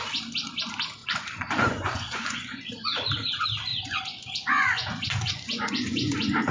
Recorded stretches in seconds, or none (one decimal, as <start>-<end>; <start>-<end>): 0.0-1.0; 2.7-3.7